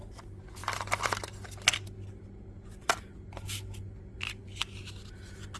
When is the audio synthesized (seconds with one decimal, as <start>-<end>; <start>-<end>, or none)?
none